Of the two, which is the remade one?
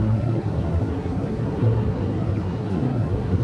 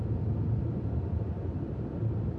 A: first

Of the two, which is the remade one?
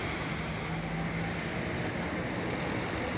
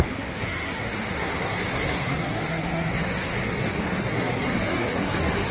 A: second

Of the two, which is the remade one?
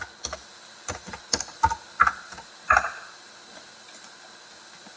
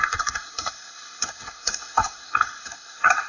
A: second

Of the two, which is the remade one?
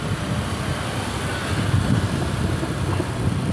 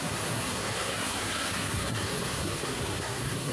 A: second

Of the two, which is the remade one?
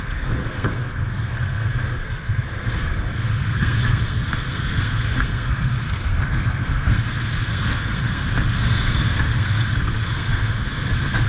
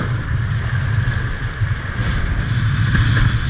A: first